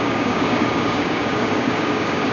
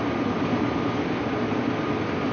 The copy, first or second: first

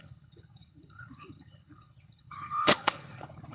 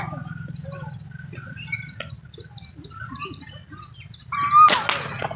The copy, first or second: first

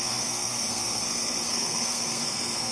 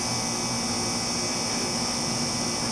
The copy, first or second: first